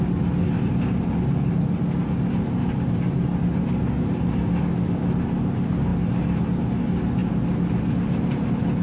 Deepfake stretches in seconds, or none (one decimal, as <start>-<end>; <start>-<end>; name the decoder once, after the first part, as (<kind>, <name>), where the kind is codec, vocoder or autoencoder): none